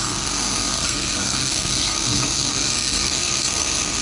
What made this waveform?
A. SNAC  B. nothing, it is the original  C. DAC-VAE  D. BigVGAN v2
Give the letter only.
A